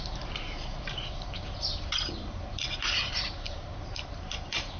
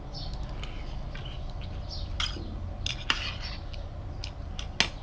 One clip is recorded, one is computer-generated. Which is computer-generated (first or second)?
first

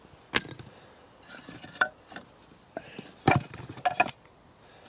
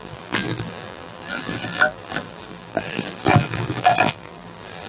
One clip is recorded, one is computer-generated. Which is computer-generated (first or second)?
second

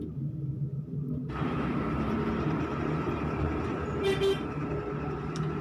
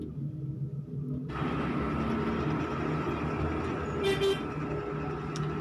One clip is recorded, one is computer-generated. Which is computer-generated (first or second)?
first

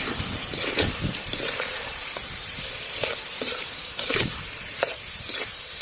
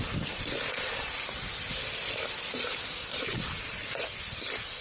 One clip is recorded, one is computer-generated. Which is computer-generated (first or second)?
first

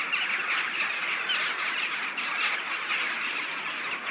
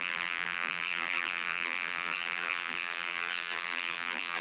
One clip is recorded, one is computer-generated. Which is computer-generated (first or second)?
second